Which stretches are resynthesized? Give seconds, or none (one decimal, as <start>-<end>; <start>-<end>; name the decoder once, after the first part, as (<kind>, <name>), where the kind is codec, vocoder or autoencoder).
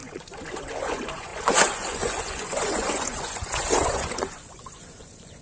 0.0-5.4 (vocoder, Vocos)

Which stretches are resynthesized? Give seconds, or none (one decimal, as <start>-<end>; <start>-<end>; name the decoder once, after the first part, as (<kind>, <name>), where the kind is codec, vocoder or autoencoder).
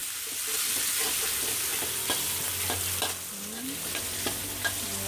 none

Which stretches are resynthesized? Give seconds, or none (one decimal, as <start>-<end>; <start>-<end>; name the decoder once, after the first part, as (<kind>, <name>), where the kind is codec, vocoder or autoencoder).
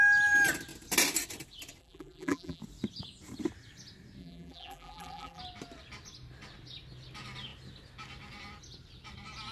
1.8-2.6 (vocoder, BigVGAN v2); 4.2-5.4